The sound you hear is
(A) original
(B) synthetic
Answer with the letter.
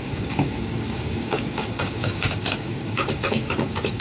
B